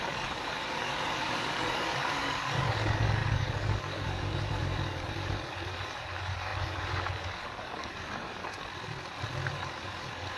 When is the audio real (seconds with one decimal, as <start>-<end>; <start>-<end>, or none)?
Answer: 8.4-9.6